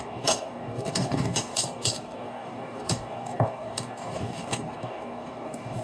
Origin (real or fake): fake